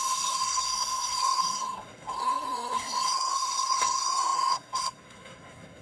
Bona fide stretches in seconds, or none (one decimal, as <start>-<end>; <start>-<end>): none